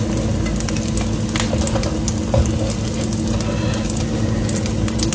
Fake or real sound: real